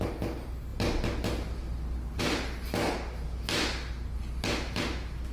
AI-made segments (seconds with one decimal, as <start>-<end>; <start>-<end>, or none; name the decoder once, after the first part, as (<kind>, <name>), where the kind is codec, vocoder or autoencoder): none